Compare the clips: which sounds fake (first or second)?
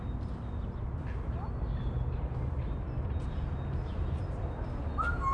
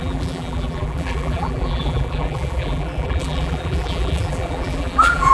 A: second